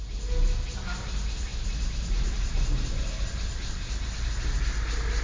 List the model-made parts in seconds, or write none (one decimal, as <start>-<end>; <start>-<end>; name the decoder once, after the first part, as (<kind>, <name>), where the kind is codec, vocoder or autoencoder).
none